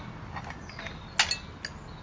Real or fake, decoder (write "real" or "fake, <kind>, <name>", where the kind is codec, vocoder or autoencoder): real